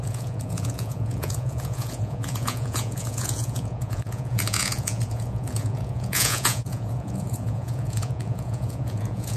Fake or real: fake